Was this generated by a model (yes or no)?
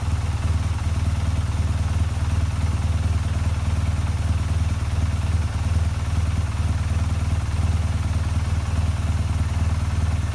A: no